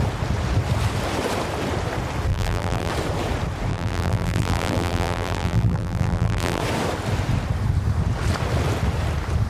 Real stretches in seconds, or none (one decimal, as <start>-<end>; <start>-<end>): 0.0-2.3; 2.9-3.7; 6.6-9.5